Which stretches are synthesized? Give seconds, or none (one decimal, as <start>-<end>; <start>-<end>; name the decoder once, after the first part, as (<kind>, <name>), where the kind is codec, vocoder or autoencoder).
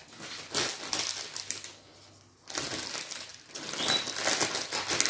none